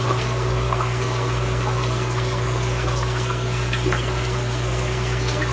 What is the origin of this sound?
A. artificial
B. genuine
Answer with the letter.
A